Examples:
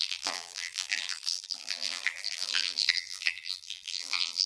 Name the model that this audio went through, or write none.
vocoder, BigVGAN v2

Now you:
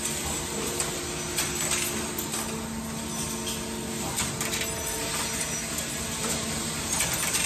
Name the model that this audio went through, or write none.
none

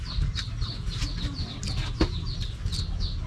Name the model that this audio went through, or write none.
none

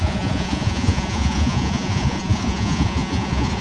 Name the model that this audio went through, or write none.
vocoder, Vocos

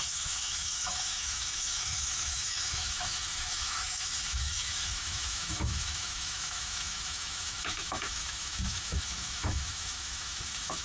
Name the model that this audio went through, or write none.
autoencoder, DAC-VAE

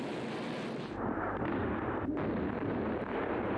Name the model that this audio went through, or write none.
none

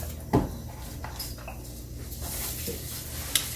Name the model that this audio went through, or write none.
none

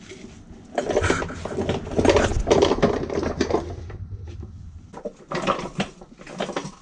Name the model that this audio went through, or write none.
none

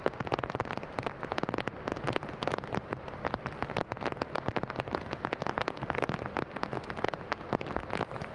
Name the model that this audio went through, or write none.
none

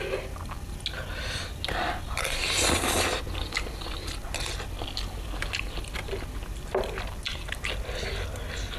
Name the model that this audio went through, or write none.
none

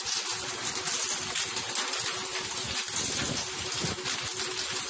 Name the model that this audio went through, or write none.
none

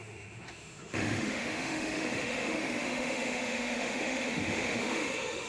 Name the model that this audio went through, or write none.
autoencoder, DAC-VAE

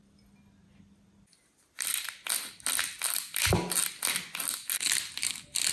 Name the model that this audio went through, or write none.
none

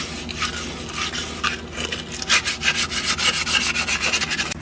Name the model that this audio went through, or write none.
none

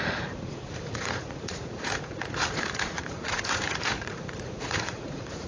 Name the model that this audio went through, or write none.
vocoder, Vocos